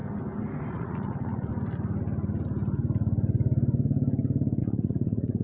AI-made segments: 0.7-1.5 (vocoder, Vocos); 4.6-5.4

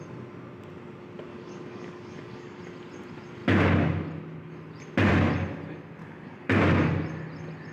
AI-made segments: 1.3-2.6 (codec, DAC); 6.0-6.6

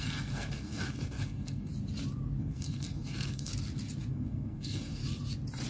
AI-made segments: 0.0-1.7 (codec, SNAC); 2.4-3.5; 4.1-5.0